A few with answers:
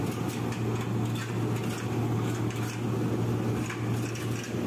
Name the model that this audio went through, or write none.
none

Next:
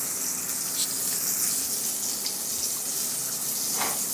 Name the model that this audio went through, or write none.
none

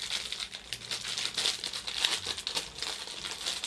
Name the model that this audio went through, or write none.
none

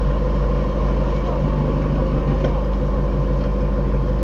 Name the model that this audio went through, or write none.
none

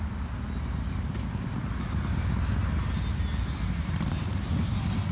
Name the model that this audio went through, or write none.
none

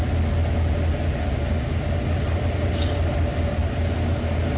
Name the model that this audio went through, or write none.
none